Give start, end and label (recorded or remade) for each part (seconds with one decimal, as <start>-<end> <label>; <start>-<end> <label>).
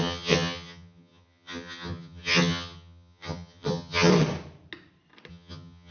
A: 0.0-4.1 remade; 4.1-5.3 recorded; 5.3-5.9 remade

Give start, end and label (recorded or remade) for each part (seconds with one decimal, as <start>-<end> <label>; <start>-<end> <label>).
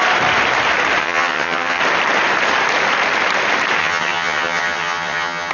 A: 0.0-1.0 recorded; 1.0-1.8 remade; 1.8-3.8 recorded; 3.8-5.5 remade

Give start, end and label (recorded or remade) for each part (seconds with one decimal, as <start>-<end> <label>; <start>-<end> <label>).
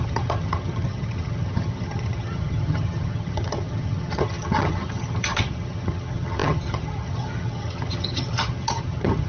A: 0.0-9.3 remade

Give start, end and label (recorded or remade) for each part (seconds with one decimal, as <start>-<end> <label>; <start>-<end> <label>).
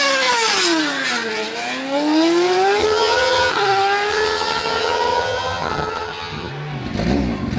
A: 0.0-2.8 recorded; 2.8-3.5 remade; 3.5-4.1 recorded; 4.1-6.5 remade; 6.5-7.6 recorded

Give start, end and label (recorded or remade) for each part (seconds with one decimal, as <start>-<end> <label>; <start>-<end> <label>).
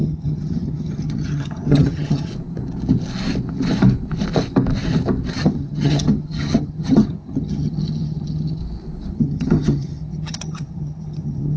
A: 0.0-2.3 remade; 2.3-5.3 recorded; 5.3-8.6 remade; 8.6-9.1 recorded; 9.1-11.6 remade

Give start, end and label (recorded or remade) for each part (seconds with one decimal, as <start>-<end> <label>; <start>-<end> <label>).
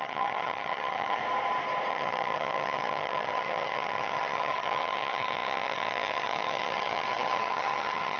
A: 0.0-1.2 remade; 1.2-1.9 recorded; 1.9-8.2 remade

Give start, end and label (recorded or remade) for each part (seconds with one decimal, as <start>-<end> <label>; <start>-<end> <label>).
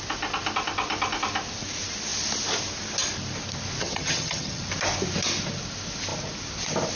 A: 0.0-3.8 recorded; 3.8-4.6 remade; 4.6-7.0 recorded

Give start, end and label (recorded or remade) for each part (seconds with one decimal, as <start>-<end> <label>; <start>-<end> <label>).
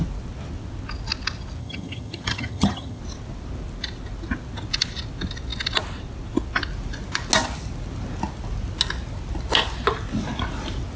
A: 0.0-1.6 recorded; 1.6-3.0 remade; 3.0-11.0 recorded